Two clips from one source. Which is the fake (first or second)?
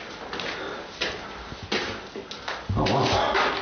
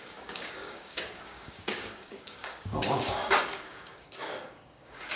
second